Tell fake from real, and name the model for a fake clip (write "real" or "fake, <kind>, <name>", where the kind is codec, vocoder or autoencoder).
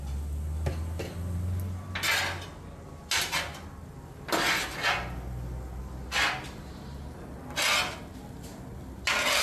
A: real